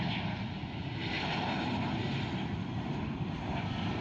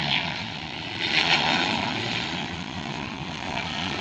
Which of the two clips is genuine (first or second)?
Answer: first